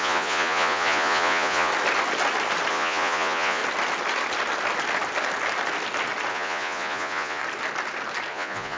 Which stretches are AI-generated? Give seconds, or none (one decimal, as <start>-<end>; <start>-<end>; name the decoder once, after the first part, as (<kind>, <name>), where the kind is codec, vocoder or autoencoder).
0.0-1.7 (vocoder, Vocos); 2.7-3.6; 6.3-7.4; 8.3-8.8